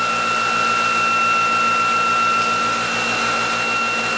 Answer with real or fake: real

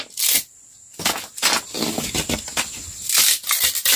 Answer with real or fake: real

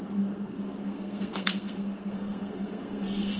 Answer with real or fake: fake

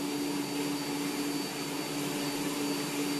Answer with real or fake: real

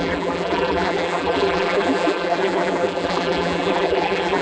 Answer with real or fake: fake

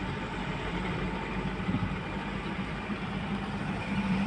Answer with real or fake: fake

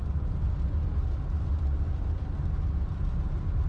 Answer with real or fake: real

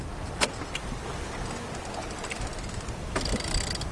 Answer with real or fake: real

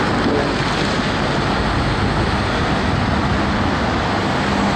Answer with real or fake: real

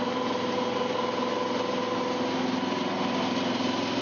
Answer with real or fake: real